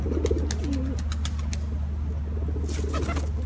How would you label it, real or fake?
real